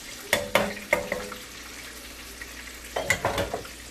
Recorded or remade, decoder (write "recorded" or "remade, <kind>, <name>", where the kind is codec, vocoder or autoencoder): recorded